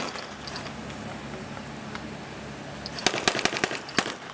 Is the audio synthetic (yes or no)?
no